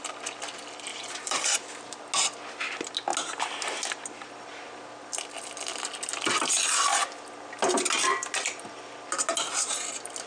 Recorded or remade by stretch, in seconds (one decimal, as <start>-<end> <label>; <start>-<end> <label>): 0.0-0.9 recorded; 0.9-2.0 remade; 2.0-10.3 recorded